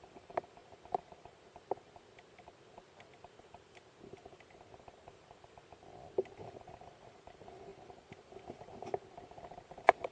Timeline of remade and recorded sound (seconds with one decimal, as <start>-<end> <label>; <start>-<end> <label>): 0.0-5.7 recorded; 5.7-6.3 remade; 6.3-10.1 recorded